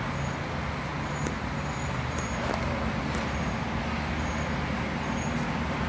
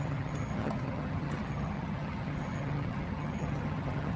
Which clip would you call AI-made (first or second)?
second